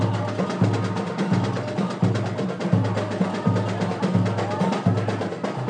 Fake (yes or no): no